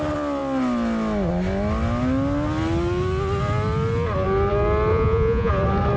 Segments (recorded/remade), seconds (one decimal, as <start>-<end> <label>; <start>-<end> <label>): 0.0-4.9 recorded; 4.9-5.5 remade; 5.5-6.0 recorded